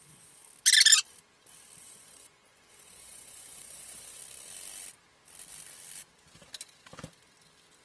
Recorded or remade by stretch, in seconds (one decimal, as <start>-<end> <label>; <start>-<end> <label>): 0.0-0.4 remade; 0.4-1.8 recorded; 1.8-4.2 remade; 4.2-7.8 recorded